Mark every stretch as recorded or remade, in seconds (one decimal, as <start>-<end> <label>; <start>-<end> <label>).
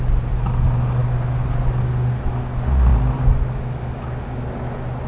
0.0-5.1 recorded